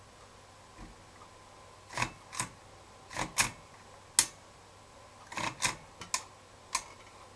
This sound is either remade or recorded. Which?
recorded